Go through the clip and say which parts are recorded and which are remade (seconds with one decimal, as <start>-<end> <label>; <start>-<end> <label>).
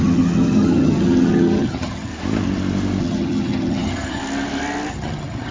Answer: 0.0-2.1 remade; 2.1-3.0 recorded; 3.0-4.2 remade; 4.2-4.9 recorded; 4.9-5.5 remade